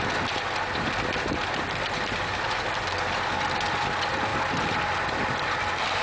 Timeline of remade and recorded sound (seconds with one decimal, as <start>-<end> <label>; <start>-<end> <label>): 0.0-6.0 recorded